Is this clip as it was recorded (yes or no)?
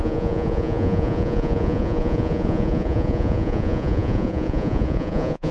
no